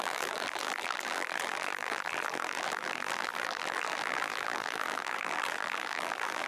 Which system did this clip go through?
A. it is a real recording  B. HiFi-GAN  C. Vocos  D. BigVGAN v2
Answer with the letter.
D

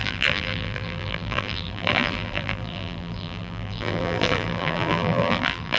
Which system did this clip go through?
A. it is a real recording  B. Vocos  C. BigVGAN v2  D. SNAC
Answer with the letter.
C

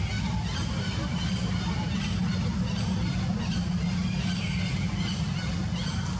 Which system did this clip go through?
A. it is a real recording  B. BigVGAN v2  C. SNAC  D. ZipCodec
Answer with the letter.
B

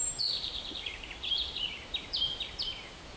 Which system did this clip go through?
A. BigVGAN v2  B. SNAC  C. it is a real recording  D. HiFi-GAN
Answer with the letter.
A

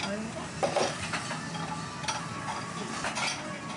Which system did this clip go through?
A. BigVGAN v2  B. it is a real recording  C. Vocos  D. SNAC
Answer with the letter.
B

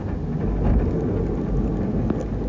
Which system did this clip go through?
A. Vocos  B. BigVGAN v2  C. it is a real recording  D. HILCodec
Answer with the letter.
C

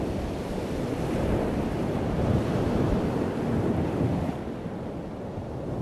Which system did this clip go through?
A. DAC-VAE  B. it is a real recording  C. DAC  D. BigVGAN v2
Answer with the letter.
B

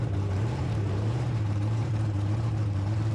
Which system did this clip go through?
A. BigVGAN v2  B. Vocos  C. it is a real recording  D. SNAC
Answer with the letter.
A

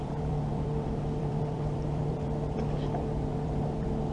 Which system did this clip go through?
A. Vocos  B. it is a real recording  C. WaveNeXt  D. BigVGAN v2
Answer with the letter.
D